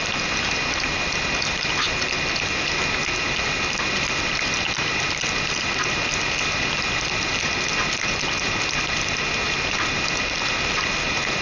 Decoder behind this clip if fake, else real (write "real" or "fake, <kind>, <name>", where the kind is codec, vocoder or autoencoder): real